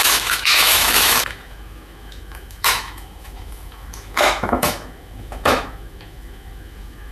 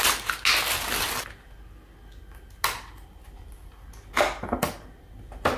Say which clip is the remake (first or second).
first